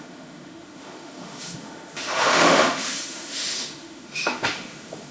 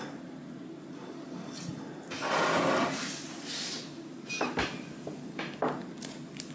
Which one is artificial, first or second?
first